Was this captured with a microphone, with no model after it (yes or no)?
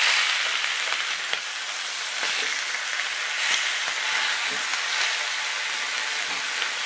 yes